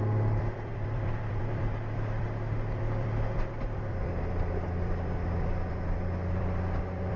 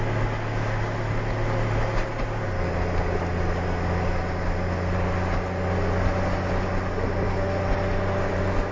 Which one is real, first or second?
second